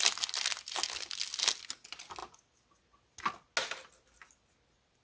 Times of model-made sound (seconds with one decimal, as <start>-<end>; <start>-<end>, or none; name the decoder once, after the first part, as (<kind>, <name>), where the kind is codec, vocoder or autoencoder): none